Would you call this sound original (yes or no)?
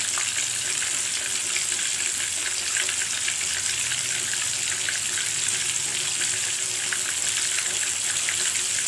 yes